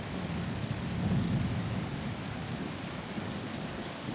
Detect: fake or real fake